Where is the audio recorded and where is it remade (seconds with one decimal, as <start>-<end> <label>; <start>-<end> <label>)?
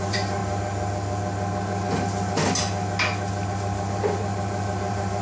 0.0-0.4 remade; 0.4-3.5 recorded; 3.5-5.2 remade